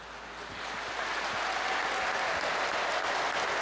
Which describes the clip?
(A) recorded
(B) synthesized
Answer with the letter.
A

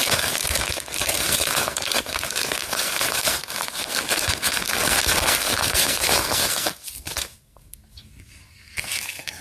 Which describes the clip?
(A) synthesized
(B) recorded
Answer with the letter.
A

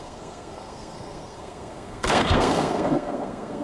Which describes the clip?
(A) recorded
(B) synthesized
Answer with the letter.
B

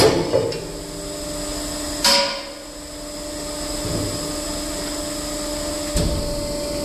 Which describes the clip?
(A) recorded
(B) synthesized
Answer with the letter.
A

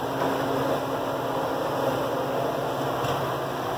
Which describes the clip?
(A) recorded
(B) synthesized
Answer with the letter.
A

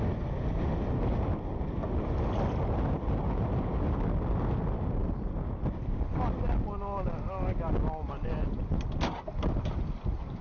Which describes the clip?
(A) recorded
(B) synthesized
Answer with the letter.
A